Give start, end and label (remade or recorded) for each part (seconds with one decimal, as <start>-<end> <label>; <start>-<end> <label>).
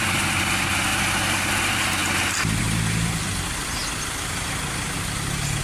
0.0-5.6 recorded